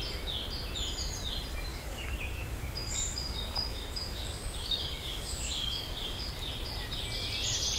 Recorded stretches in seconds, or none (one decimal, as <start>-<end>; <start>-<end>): 0.0-1.7; 6.3-7.8

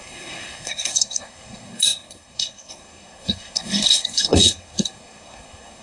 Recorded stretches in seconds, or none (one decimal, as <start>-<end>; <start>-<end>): none

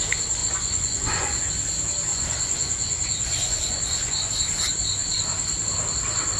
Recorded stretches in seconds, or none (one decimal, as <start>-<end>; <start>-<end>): 0.0-0.4; 1.5-2.1; 4.3-6.4

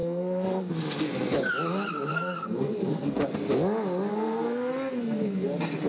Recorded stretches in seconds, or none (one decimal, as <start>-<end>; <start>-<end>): 0.7-2.1; 3.2-4.1; 5.5-5.9